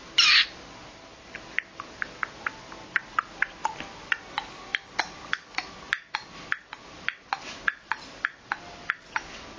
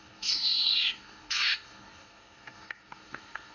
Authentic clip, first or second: first